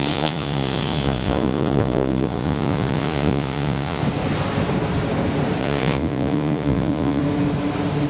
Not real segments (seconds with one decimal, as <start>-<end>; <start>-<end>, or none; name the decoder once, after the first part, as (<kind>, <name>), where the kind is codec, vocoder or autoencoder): 0.0-4.0 (vocoder, Vocos); 5.6-7.2